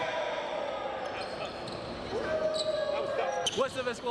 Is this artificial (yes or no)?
no